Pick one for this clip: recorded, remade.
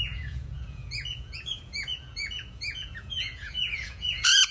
remade